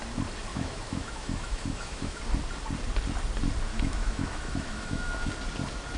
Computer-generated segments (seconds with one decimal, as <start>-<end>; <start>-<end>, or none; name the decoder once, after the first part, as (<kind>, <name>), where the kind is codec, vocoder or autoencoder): 0.5-2.2 (autoencoder, DAC-VAE); 3.7-5.3